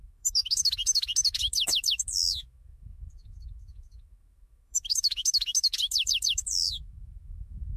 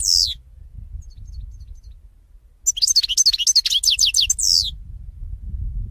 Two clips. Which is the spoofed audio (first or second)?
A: first